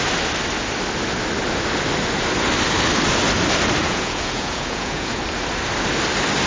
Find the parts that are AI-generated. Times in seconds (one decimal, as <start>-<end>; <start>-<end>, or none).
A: 3.8-5.2